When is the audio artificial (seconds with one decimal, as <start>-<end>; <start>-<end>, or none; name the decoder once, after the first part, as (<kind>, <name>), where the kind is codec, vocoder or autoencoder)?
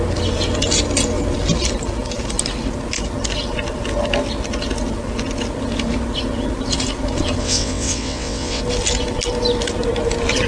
7.4-8.6 (vocoder, WaveNeXt)